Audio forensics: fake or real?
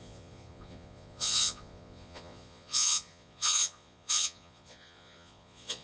fake